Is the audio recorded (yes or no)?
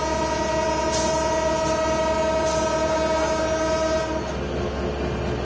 yes